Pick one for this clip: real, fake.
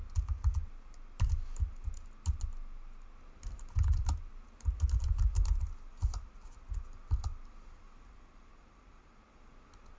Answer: real